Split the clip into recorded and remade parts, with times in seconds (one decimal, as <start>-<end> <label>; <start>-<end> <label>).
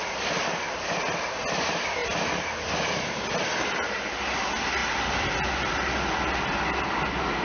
0.0-7.4 recorded